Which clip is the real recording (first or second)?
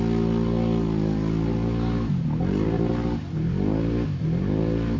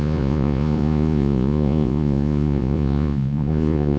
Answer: first